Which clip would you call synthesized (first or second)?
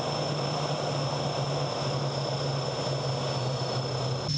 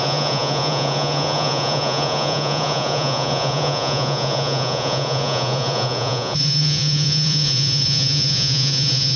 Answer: second